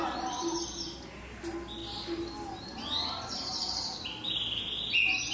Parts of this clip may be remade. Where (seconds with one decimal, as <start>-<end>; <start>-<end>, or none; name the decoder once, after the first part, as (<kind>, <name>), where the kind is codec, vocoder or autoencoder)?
none